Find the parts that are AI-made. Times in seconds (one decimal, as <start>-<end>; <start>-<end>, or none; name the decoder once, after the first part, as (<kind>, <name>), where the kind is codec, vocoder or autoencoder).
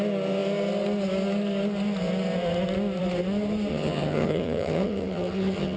3.7-5.8 (vocoder, HiFi-GAN)